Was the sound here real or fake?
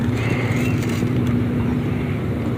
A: fake